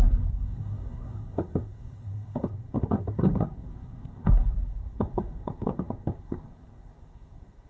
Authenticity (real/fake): fake